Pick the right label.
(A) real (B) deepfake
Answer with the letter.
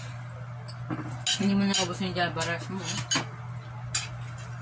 A